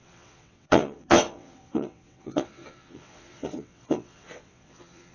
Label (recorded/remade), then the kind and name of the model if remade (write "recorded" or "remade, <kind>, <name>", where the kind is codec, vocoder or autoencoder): remade, vocoder, WaveNeXt